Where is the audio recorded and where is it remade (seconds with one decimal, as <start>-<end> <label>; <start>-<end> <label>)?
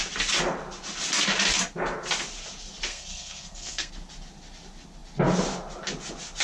0.0-2.9 recorded; 2.9-3.9 remade; 3.9-6.4 recorded